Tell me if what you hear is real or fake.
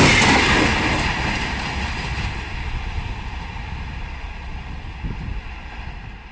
real